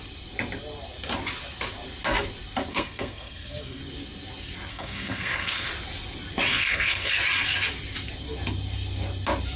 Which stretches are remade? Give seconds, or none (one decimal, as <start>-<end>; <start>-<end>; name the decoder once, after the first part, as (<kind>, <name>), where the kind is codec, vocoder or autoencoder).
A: 2.7-3.8 (codec, SNAC); 4.7-5.7; 6.5-7.1